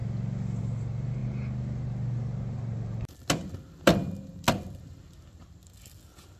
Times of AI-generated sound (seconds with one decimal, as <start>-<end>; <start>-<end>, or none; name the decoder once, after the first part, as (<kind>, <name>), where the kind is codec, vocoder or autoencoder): none